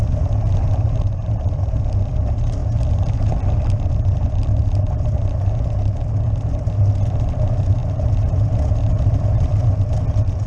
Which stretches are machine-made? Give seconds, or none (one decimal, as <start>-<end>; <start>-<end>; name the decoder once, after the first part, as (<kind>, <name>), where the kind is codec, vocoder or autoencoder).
none